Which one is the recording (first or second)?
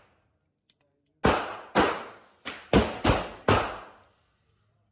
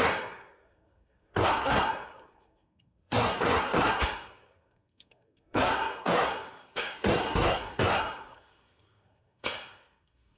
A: first